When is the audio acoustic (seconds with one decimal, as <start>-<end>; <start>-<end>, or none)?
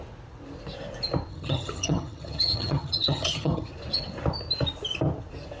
0.0-1.3; 3.7-5.6